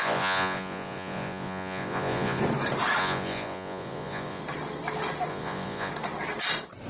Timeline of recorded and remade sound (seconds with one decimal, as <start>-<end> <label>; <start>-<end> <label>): 0.0-2.4 remade; 2.4-3.0 recorded; 3.0-4.4 remade; 4.4-5.3 recorded; 5.3-5.9 remade; 5.9-6.9 recorded